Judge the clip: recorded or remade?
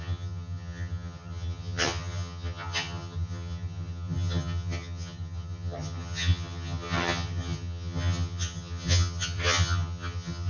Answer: remade